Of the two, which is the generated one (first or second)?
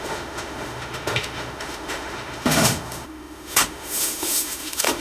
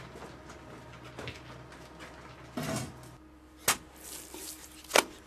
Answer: first